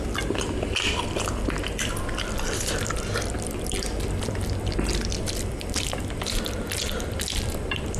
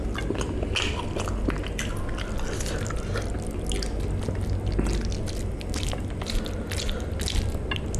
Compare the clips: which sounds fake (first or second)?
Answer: first